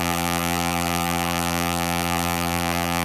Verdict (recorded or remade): remade